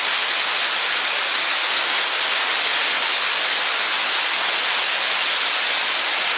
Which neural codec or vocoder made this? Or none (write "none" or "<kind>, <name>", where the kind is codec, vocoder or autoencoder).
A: none